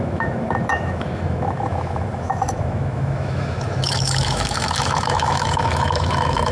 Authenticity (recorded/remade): remade